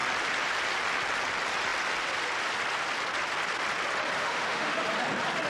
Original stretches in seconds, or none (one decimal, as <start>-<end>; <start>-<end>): 0.0-4.2; 4.8-5.5